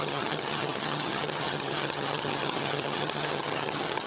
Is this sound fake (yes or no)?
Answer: yes